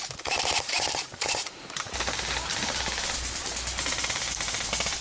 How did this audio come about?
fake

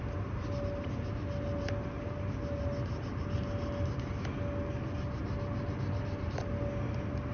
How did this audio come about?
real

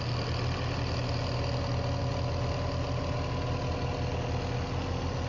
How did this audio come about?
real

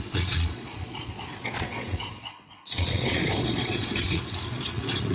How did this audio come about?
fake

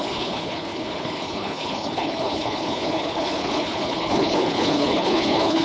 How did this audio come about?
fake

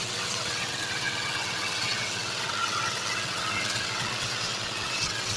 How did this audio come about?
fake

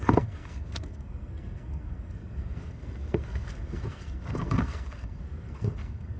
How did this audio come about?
fake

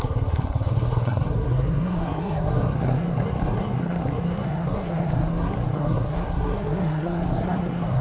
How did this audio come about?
fake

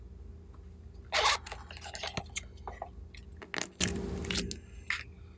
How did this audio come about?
real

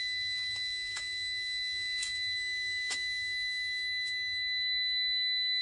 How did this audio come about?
fake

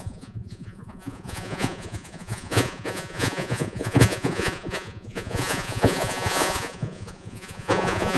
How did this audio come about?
fake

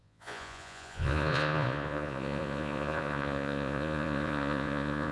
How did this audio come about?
fake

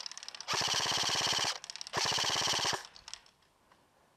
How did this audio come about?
real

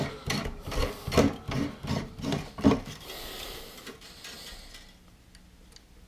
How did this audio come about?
real